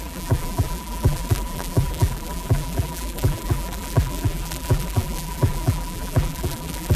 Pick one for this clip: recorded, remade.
remade